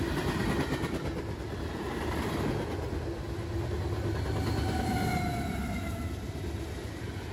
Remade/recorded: recorded